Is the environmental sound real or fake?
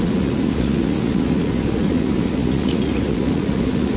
fake